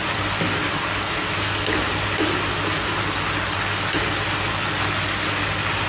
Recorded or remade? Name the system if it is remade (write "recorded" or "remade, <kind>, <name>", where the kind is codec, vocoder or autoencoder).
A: recorded